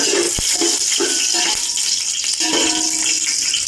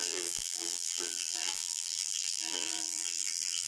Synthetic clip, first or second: second